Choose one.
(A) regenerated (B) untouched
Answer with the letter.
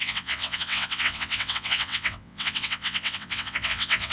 A